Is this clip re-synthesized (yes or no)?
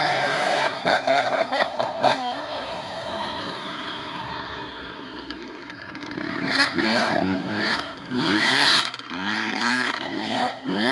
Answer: yes